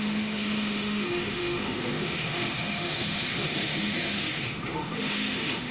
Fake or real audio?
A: fake